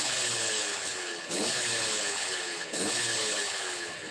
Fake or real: fake